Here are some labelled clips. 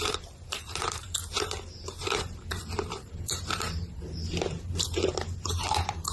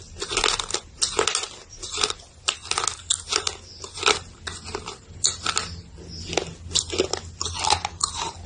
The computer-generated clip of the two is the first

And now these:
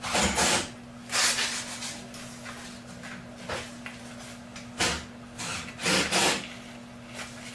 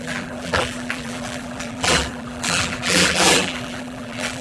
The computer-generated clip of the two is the second